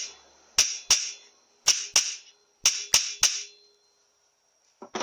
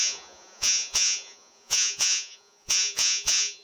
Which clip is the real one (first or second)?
first